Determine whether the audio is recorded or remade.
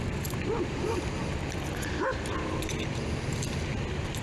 recorded